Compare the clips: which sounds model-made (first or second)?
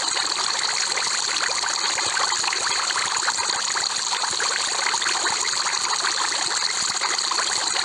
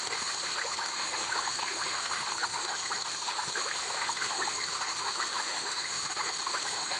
second